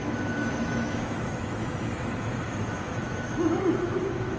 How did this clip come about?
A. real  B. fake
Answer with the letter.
B